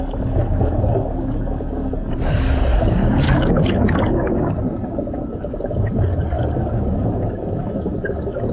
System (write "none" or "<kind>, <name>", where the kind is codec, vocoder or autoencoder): codec, DAC